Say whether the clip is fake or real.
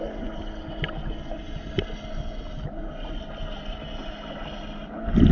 real